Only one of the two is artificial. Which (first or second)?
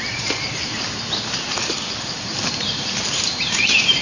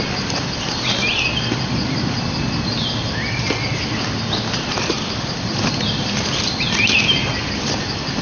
first